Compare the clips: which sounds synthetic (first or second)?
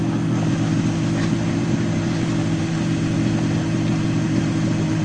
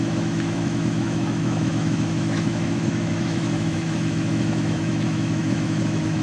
second